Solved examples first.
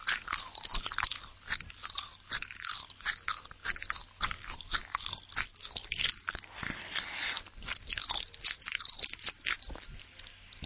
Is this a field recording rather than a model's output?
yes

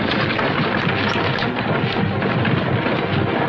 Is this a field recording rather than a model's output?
yes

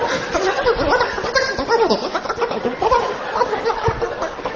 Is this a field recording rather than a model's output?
yes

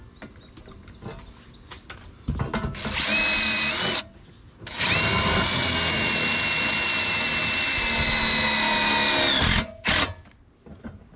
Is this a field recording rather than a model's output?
yes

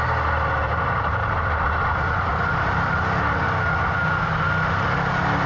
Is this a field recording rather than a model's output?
yes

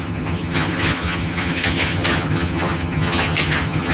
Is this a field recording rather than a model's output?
no